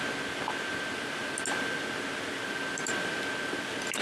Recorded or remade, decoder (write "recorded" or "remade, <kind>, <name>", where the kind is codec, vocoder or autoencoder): recorded